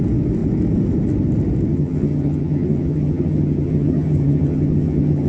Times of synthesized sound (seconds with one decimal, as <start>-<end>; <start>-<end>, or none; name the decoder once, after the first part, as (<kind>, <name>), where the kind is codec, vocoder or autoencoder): 1.7-5.3 (vocoder, HiFi-GAN)